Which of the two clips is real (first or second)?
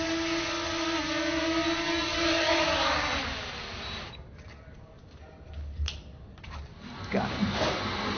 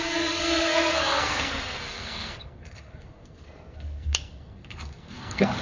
first